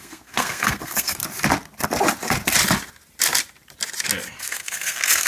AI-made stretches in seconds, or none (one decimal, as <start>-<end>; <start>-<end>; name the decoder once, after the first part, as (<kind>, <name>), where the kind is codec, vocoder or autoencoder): 0.0-1.2 (codec, SNAC); 4.4-5.3